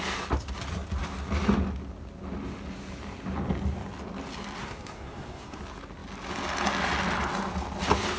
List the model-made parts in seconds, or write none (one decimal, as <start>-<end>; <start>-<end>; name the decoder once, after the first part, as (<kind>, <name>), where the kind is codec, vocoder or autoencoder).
4.6-5.6 (codec, SNAC)